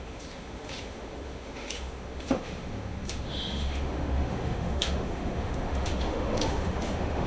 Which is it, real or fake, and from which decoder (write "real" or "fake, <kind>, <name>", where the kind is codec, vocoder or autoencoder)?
fake, autoencoder, DAC-VAE